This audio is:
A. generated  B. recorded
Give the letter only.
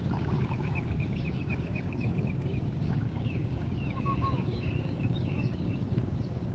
A